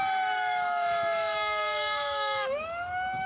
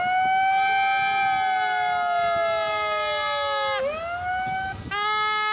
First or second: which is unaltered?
second